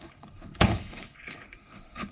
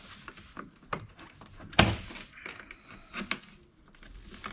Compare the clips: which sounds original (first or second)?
second